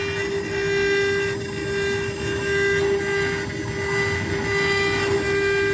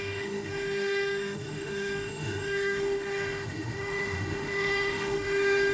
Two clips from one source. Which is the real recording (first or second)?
first